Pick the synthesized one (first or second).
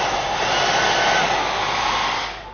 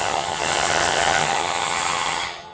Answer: second